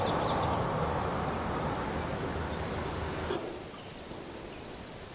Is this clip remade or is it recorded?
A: recorded